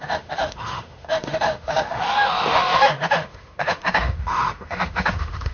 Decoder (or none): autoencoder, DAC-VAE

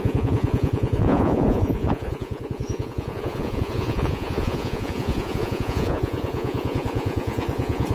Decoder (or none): vocoder, Vocos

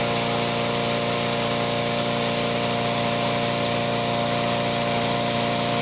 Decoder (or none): none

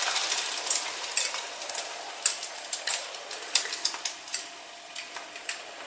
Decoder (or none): none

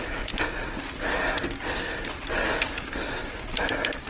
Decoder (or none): none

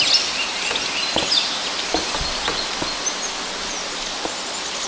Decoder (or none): none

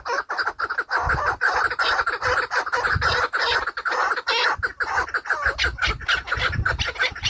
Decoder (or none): none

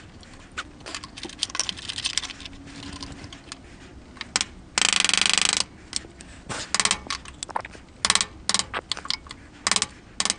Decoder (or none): none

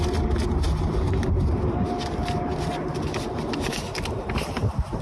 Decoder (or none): none